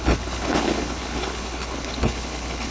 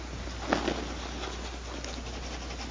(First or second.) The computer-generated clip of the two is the first